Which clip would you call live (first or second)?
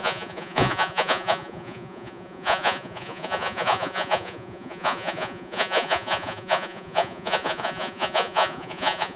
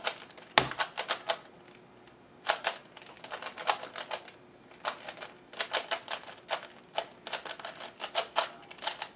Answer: second